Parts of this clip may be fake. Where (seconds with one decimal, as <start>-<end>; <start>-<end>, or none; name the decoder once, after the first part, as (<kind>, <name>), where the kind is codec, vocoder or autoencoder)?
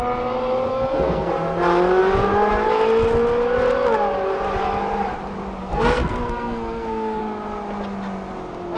0.7-1.3 (codec, SNAC); 5.6-7.2